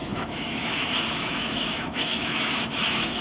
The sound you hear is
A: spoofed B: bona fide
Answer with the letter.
A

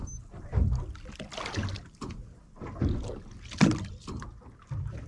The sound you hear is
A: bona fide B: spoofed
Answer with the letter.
A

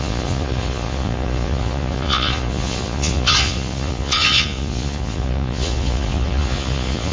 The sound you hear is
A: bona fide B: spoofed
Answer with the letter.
B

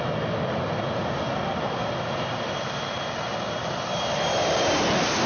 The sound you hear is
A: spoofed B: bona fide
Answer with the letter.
B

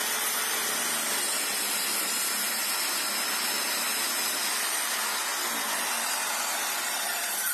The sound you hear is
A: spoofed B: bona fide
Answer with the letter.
B